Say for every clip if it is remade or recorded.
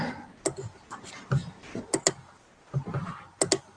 recorded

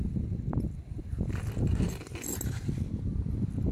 recorded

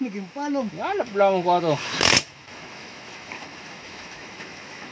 remade